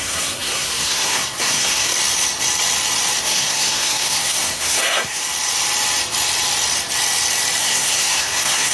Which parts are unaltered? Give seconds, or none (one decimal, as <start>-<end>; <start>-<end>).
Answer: 1.9-3.2; 5.2-7.6